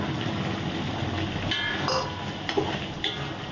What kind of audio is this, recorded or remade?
recorded